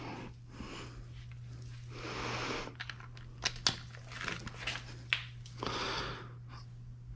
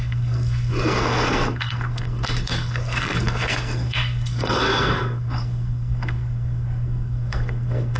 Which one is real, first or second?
first